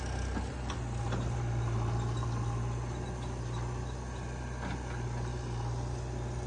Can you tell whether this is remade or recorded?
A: recorded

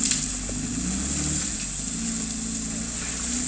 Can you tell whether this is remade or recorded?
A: recorded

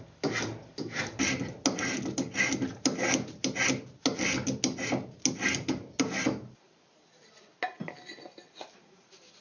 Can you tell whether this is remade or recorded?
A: recorded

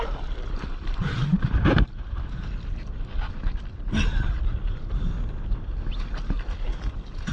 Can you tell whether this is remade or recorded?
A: recorded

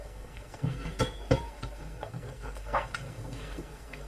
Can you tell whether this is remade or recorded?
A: remade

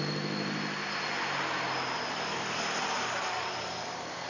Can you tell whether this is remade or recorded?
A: recorded